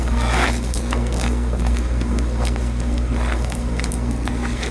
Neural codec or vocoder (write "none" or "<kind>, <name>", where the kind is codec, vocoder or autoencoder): codec, SNAC